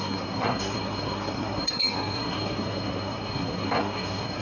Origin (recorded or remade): remade